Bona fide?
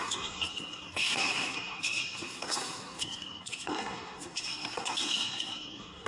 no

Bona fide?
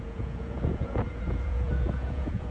no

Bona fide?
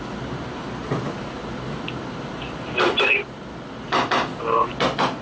yes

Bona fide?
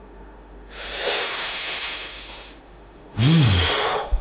no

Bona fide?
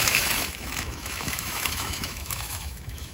no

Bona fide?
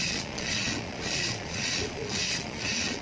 no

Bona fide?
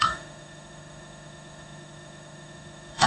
no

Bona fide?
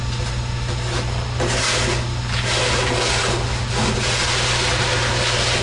yes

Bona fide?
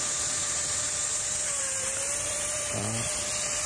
no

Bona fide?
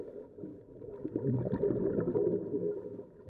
yes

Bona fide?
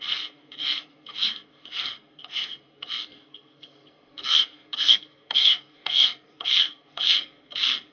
no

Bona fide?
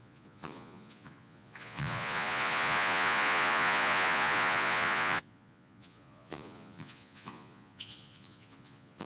no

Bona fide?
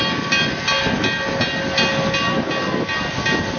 yes